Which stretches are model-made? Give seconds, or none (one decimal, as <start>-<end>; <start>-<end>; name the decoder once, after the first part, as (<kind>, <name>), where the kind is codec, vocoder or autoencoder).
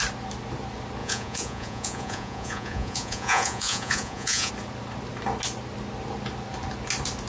1.0-4.5 (vocoder, Vocos)